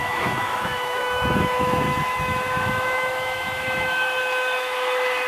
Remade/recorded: remade